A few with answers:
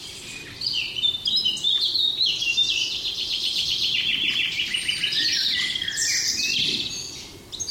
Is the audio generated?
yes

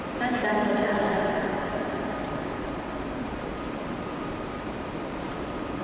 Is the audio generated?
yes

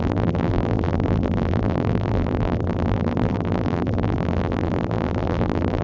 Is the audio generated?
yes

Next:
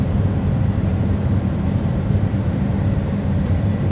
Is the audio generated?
yes